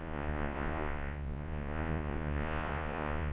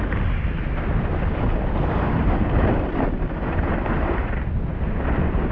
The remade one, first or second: first